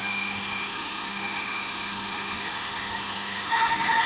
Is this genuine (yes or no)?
no